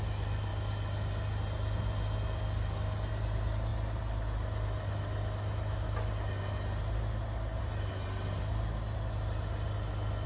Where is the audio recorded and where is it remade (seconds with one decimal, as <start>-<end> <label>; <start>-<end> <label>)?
0.0-10.3 recorded